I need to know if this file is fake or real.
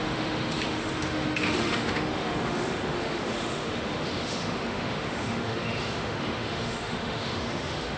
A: fake